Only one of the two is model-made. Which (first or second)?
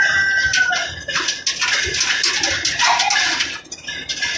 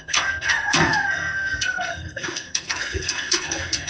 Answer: second